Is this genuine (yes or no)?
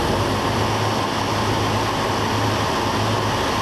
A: yes